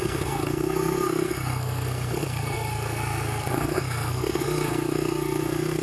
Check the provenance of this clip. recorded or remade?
remade